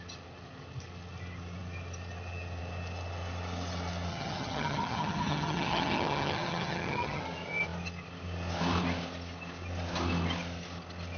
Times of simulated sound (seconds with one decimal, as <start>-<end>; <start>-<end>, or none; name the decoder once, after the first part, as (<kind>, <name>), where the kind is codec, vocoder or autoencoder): 4.1-7.2 (vocoder, HiFi-GAN)